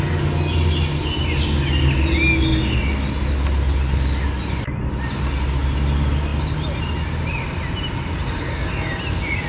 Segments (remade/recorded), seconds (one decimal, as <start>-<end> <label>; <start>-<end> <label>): 0.0-9.5 recorded